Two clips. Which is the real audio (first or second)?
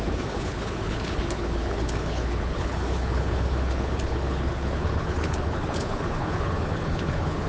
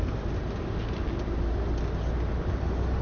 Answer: second